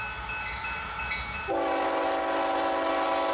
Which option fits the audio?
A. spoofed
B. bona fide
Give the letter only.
B